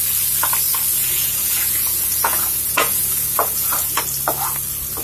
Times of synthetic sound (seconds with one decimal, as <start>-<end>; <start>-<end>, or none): 1.0-4.0